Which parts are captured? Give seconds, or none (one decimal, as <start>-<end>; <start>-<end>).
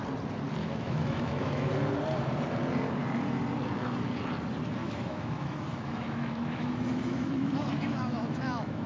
0.0-0.6; 1.7-4.8